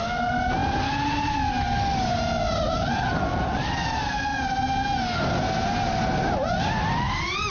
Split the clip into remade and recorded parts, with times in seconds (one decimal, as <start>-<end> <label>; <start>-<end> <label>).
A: 0.0-7.5 recorded